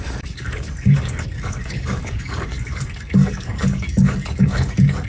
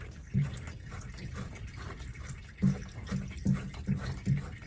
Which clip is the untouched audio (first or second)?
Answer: second